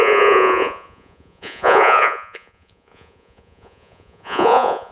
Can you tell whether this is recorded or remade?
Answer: remade